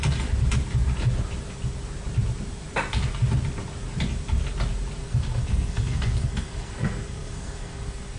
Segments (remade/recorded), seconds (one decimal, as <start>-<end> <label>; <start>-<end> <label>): 0.0-5.0 recorded; 5.0-8.2 remade